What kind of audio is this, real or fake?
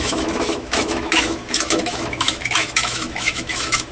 fake